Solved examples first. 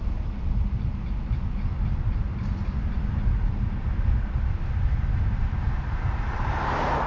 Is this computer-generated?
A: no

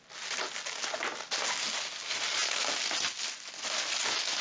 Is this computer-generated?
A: no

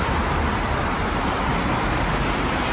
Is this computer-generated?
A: no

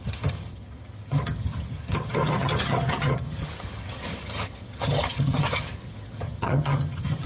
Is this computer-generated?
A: yes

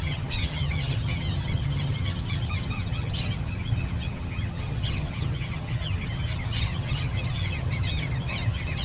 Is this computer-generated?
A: yes